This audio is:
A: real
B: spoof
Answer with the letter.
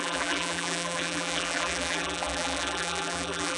B